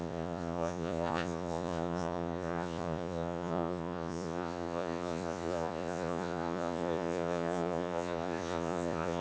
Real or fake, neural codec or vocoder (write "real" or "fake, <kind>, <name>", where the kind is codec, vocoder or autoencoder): fake, vocoder, Vocos